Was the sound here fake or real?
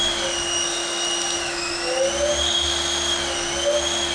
real